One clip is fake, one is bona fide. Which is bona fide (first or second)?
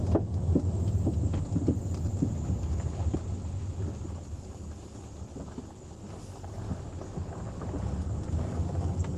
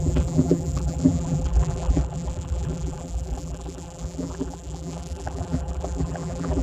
first